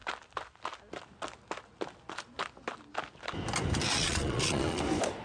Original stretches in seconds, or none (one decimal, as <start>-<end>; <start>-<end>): 0.0-3.9; 4.8-5.2